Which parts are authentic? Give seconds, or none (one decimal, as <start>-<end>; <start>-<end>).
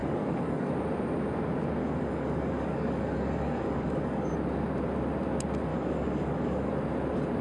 0.7-1.8; 4.3-5.7; 6.7-7.4